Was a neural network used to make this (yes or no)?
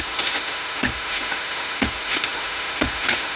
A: yes